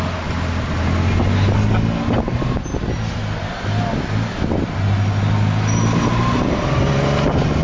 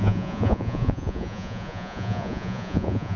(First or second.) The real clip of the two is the first